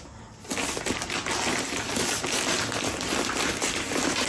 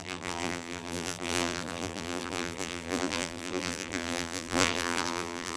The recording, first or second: first